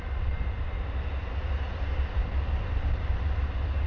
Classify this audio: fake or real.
real